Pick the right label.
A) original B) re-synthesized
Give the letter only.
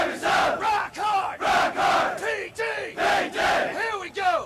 A